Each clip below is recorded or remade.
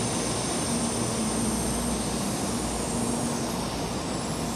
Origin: recorded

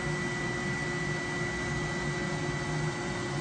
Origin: recorded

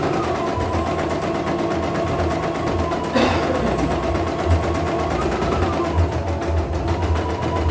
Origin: recorded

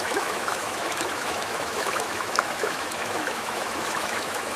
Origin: remade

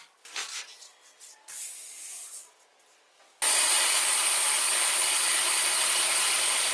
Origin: recorded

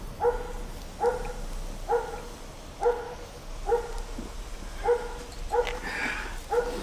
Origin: recorded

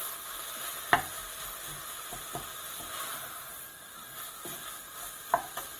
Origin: recorded